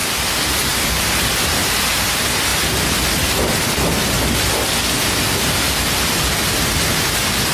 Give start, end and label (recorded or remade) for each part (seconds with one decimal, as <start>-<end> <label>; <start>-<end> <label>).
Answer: 0.0-2.5 remade; 2.5-5.4 recorded; 5.4-7.5 remade